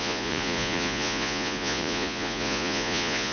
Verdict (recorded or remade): remade